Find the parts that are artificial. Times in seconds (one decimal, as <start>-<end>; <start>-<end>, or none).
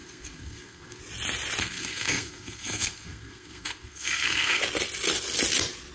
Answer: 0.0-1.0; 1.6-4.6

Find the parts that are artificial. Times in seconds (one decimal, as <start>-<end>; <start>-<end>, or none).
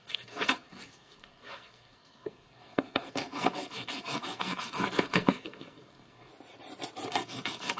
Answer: 0.0-6.3; 7.1-7.8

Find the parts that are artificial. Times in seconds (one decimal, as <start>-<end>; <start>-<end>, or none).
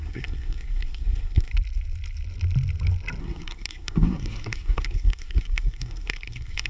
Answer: 0.0-1.5; 3.2-6.7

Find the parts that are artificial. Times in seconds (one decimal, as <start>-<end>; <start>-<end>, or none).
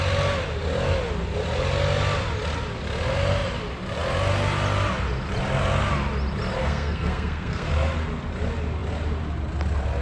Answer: 6.6-7.7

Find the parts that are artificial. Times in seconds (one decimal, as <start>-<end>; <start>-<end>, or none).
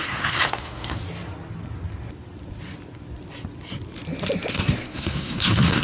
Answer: 0.0-1.0; 4.5-5.8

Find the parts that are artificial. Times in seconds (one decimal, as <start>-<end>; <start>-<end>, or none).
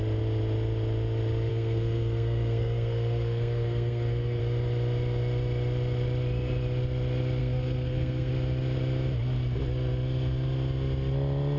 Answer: 1.5-4.4; 7.4-8.3